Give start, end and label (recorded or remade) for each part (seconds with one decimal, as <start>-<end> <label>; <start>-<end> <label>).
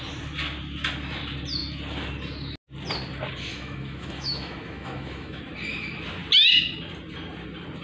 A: 0.0-3.5 recorded; 3.5-5.4 remade; 5.4-7.8 recorded